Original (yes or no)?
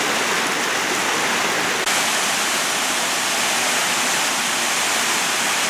yes